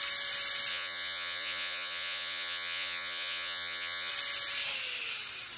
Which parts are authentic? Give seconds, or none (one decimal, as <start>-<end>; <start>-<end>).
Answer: 0.0-0.7; 4.1-5.6